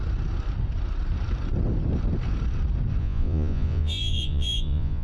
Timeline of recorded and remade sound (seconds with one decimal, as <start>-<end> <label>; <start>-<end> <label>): 0.0-3.0 recorded; 3.0-5.0 remade